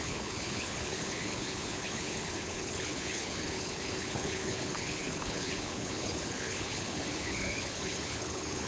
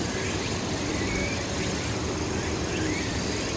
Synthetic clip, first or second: first